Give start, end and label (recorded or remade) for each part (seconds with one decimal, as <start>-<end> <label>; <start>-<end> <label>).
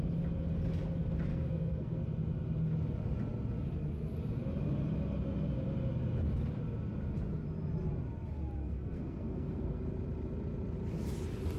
0.0-1.3 recorded; 1.3-2.0 remade; 2.0-8.6 recorded; 8.6-9.8 remade; 9.8-11.6 recorded